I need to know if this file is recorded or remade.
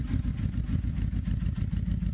recorded